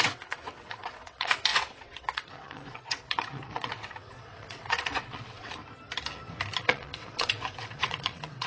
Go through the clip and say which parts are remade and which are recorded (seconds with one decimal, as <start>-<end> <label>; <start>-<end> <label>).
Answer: 0.0-5.6 remade; 5.6-6.6 recorded; 6.6-8.5 remade